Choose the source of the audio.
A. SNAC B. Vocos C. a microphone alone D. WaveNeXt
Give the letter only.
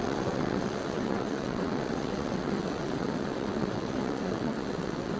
D